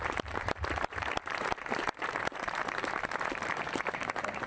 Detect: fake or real fake